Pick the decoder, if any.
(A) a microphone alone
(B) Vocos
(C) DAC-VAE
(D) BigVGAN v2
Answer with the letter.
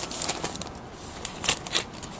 A